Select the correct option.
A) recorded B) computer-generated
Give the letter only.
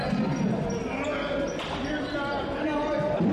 A